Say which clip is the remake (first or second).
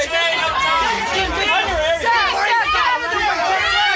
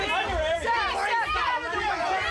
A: second